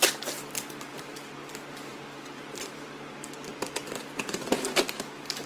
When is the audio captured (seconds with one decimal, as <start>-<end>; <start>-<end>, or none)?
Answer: 0.0-0.9; 1.5-1.9